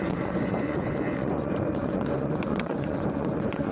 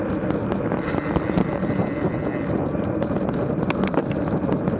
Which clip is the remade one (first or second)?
first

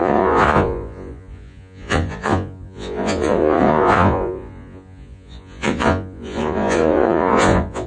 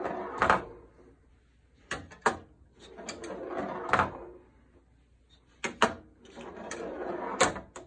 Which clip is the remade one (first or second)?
first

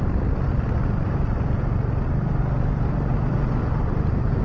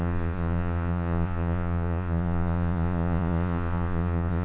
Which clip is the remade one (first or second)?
second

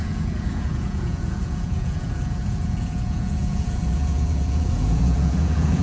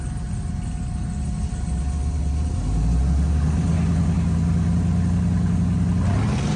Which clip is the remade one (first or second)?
first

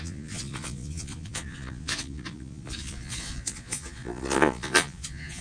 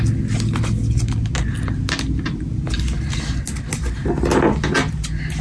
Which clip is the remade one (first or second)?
first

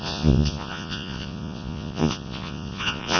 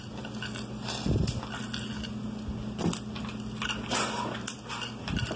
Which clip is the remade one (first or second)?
first